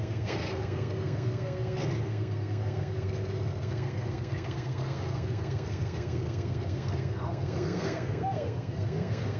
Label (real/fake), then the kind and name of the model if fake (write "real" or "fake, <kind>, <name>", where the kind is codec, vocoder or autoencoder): fake, codec, SNAC